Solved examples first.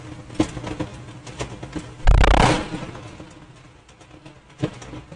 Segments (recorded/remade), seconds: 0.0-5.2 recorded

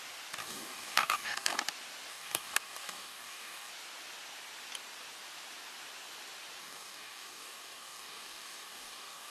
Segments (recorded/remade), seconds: 0.0-0.4 recorded; 0.4-1.6 remade; 1.6-2.1 recorded; 2.1-3.7 remade; 3.7-6.6 recorded; 6.6-9.3 remade

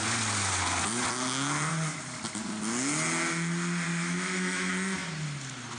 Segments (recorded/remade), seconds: 0.0-3.9 recorded; 3.9-4.7 remade; 4.7-5.8 recorded

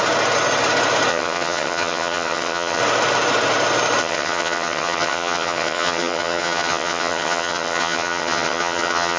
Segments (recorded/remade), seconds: 0.0-1.1 recorded; 1.1-2.8 remade; 2.8-4.0 recorded; 4.0-9.2 remade